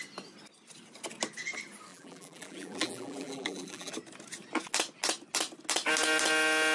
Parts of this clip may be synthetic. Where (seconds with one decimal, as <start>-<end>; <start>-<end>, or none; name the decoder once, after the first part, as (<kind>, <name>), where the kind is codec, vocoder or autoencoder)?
1.9-3.9 (vocoder, BigVGAN v2)